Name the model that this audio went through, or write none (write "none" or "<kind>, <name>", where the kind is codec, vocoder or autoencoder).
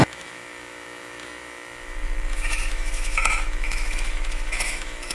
autoencoder, DAC-VAE